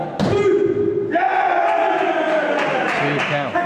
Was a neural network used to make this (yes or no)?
no